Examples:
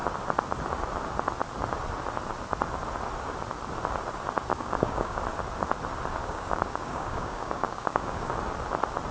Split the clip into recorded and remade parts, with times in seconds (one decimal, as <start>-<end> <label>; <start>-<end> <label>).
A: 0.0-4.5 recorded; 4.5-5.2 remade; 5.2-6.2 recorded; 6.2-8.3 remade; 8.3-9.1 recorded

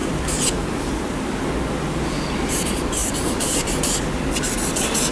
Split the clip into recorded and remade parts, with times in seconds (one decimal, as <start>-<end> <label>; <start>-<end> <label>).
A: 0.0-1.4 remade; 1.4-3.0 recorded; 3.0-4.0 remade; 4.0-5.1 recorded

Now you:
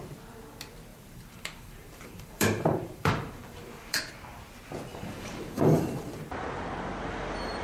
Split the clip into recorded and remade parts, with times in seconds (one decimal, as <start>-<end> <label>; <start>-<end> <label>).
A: 0.0-0.9 recorded; 0.9-4.1 remade; 4.1-4.9 recorded; 4.9-6.2 remade; 6.2-7.6 recorded

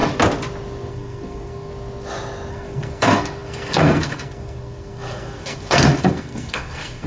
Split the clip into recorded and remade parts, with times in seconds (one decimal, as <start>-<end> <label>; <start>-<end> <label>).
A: 0.0-0.9 recorded; 0.9-1.7 remade; 1.7-2.5 recorded; 2.5-7.1 remade

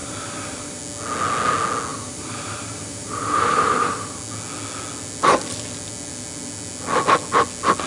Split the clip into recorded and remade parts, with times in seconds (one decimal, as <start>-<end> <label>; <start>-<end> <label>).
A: 0.0-0.8 remade; 0.8-1.9 recorded; 1.9-4.2 remade; 4.2-7.9 recorded

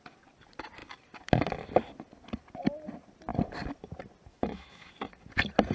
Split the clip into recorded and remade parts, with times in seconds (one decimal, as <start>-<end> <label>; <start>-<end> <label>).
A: 0.0-4.3 recorded; 4.3-4.9 remade; 4.9-5.7 recorded

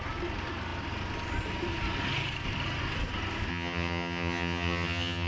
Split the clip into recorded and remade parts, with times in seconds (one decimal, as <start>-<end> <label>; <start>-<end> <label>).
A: 0.0-3.5 recorded; 3.5-5.3 remade